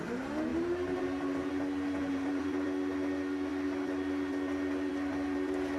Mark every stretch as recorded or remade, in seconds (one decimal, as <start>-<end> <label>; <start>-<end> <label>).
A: 0.0-0.5 recorded; 0.5-1.5 remade; 1.5-2.0 recorded; 2.0-2.5 remade; 2.5-5.8 recorded